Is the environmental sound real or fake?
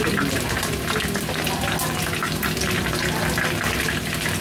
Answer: real